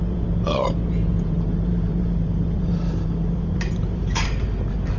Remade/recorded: remade